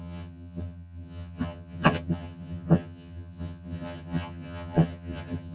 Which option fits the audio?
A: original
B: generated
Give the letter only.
B